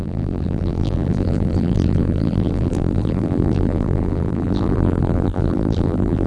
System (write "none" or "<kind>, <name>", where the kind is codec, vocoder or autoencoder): vocoder, BigVGAN v2